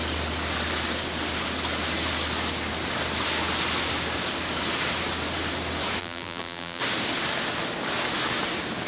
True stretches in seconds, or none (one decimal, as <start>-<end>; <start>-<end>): 0.0-6.0; 6.8-8.9